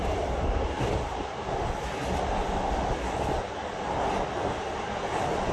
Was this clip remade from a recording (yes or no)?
no